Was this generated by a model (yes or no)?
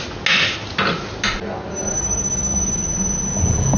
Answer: no